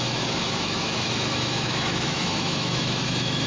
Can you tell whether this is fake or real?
fake